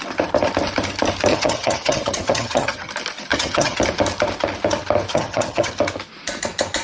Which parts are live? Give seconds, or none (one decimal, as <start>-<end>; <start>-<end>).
0.0-1.3; 2.9-3.3; 3.8-5.1; 5.7-6.8

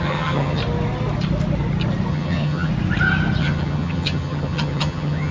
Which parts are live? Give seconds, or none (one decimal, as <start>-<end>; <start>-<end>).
0.6-2.1; 2.7-3.4

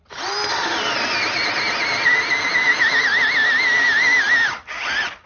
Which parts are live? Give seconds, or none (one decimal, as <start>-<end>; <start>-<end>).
0.0-5.3

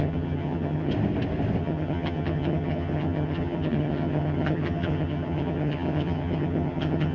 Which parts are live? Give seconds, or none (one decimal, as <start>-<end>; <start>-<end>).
0.9-1.6

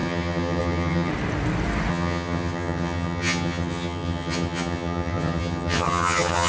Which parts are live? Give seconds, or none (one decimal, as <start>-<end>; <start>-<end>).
1.1-1.9

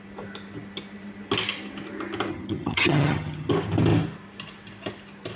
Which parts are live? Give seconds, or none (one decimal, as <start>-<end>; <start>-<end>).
0.0-2.3; 3.5-5.4

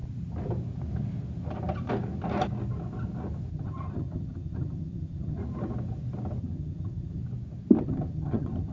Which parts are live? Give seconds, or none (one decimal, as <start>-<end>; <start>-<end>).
0.0-3.5; 5.4-6.4; 7.2-7.8